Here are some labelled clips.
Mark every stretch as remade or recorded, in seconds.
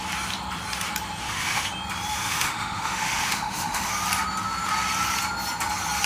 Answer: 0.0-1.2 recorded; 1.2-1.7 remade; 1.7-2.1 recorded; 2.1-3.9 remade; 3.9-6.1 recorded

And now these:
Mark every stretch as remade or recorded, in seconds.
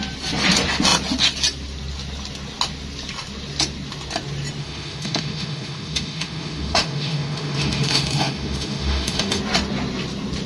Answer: 0.0-4.6 recorded; 4.6-9.4 remade; 9.4-10.5 recorded